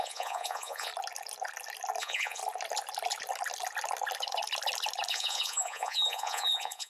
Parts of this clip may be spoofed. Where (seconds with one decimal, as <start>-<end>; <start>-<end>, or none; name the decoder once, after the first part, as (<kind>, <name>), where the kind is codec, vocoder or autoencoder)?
0.0-0.9 (vocoder, Vocos); 2.0-2.4; 5.1-6.9

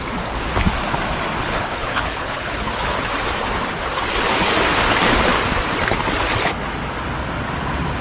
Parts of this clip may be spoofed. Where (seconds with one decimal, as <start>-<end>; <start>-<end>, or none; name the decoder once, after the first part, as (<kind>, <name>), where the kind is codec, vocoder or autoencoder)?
1.4-3.1 (codec, HILCodec)